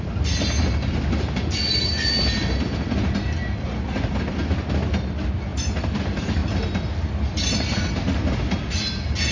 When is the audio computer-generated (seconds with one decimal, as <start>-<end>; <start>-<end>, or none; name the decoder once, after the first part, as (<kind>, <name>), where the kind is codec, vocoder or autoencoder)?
none

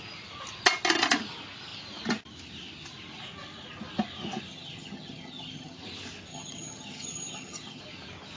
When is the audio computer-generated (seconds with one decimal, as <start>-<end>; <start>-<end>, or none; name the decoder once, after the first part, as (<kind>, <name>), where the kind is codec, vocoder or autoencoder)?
4.5-5.8 (vocoder, HiFi-GAN); 6.3-7.8

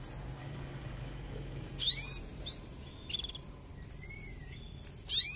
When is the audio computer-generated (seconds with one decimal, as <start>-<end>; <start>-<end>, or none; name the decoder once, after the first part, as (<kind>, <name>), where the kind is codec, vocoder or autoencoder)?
0.4-1.9 (codec, DAC)

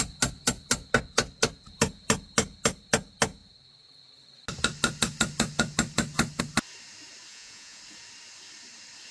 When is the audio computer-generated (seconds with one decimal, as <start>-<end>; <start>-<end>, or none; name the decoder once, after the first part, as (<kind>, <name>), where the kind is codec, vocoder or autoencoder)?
7.3-7.8 (vocoder, Vocos)